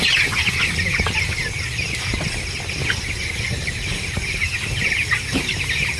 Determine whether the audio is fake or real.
real